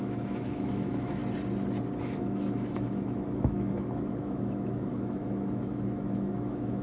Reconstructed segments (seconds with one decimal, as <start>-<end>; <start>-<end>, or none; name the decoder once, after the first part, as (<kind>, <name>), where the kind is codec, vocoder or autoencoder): 0.0-1.2 (autoencoder, DAC-VAE); 2.0-6.8